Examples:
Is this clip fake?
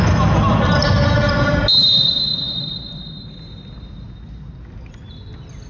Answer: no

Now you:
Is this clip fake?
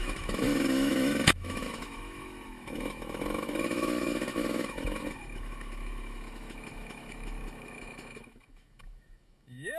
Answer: yes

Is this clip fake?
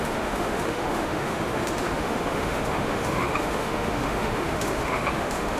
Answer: yes